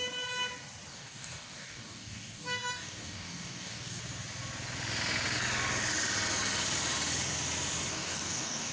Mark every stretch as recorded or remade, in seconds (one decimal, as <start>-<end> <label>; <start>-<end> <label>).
0.0-0.9 recorded; 0.9-4.0 remade; 4.0-7.9 recorded; 7.9-8.7 remade